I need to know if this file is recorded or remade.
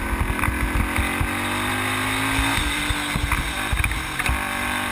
recorded